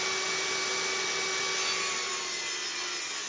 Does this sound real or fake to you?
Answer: real